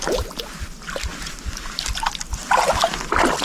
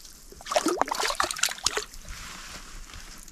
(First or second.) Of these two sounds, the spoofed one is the second